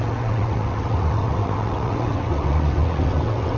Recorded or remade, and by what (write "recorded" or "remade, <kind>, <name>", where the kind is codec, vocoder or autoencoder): remade, vocoder, WaveNeXt